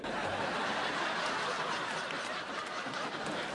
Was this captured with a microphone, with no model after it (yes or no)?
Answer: yes